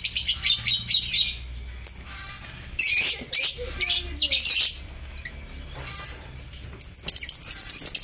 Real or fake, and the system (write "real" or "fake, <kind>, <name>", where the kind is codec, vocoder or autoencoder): real